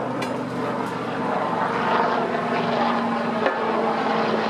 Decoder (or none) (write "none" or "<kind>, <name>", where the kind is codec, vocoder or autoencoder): none